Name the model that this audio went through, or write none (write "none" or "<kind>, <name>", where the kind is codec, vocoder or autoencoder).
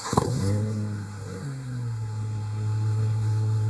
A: codec, SNAC